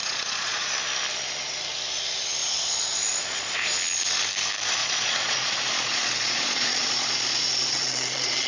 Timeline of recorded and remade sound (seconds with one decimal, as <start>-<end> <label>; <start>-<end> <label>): 0.0-0.7 remade; 0.7-2.4 recorded; 2.4-3.7 remade; 3.7-4.8 recorded; 4.8-8.5 remade